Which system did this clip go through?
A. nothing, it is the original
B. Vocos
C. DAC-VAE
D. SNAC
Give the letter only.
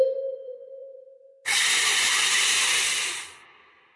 A